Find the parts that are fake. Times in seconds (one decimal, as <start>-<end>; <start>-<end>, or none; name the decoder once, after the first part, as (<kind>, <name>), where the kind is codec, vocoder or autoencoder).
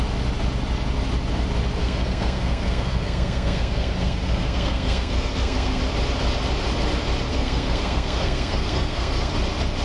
1.8-5.8 (codec, SNAC); 7.3-9.3